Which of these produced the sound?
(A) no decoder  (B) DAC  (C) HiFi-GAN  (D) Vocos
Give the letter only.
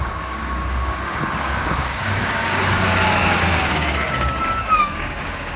B